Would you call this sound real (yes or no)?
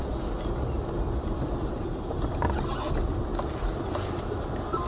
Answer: yes